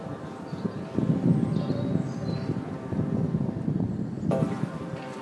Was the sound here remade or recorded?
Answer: remade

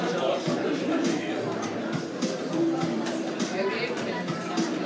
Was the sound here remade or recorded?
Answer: remade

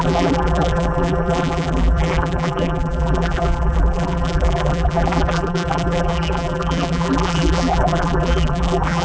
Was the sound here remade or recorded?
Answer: remade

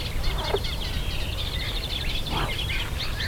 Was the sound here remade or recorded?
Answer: remade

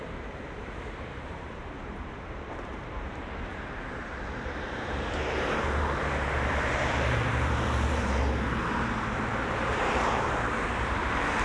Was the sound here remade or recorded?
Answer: remade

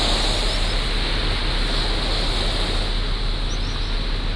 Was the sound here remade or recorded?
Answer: recorded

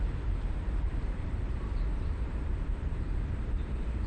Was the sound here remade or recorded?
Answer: remade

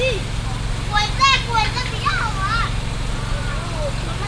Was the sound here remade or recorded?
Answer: recorded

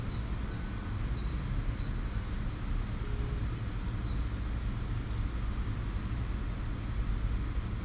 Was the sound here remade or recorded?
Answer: recorded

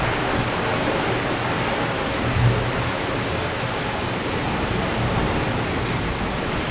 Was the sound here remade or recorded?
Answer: recorded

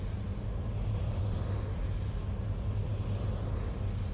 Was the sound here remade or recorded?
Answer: recorded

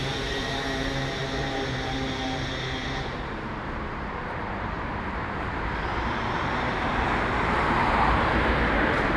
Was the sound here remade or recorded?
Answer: remade